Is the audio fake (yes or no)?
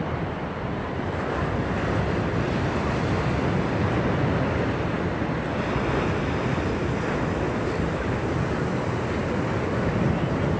no